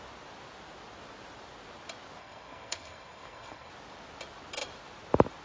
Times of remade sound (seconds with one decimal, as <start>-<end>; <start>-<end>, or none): 2.2-3.7